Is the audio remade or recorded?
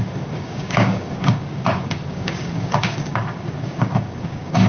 remade